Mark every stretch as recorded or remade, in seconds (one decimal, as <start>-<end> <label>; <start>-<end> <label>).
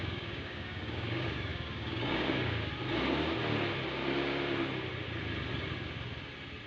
0.0-2.7 remade; 2.7-6.7 recorded